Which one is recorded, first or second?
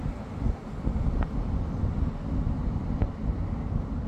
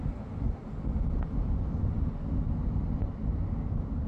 second